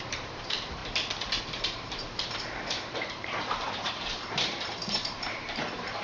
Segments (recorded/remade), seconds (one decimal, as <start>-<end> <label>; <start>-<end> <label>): 0.0-0.8 remade; 0.8-1.4 recorded; 1.4-6.0 remade